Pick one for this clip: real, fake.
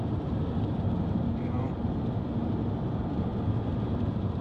fake